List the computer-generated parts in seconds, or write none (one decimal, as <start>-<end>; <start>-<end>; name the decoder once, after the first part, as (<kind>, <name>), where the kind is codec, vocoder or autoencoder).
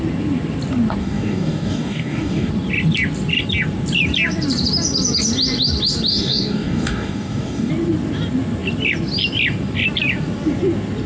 1.0-2.5 (codec, DAC); 6.1-7.7